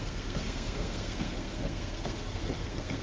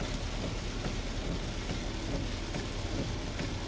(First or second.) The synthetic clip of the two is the first